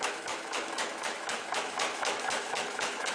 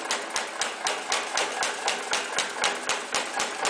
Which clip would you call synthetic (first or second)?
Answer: first